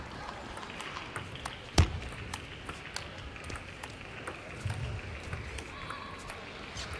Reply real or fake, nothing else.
real